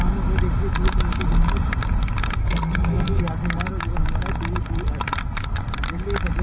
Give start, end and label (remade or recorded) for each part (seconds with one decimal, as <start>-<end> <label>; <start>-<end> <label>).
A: 0.0-2.4 recorded; 2.4-3.2 remade; 3.2-6.4 recorded